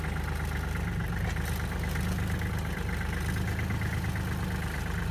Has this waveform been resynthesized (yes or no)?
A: no